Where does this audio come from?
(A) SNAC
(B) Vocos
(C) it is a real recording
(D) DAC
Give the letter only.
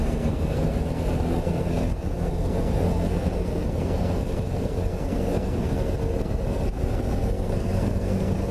A